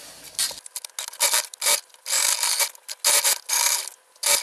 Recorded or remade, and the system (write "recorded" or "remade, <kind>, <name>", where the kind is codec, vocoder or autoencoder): recorded